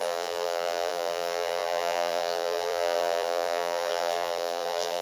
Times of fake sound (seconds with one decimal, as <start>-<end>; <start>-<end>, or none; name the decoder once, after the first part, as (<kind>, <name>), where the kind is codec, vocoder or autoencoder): 0.0-5.0 (vocoder, BigVGAN v2)